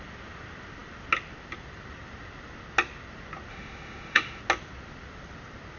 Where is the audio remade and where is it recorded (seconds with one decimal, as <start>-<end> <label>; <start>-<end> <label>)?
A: 0.0-3.5 recorded; 3.5-4.4 remade; 4.4-5.8 recorded